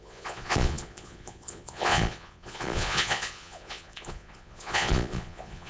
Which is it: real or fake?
fake